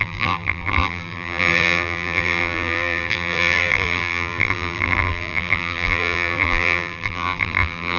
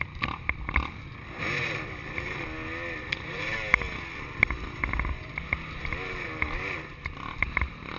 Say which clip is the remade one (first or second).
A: first